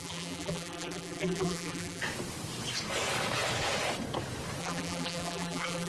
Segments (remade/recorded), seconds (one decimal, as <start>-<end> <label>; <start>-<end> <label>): 0.0-2.0 remade; 2.0-4.6 recorded; 4.6-5.9 remade